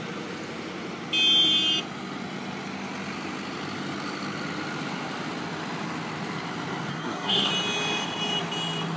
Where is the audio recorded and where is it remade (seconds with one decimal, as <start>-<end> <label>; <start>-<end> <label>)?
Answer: 0.0-6.9 recorded; 6.9-7.5 remade; 7.5-9.0 recorded